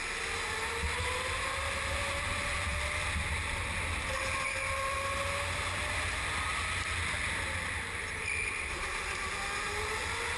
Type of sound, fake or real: real